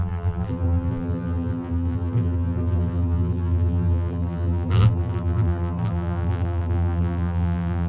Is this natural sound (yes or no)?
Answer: no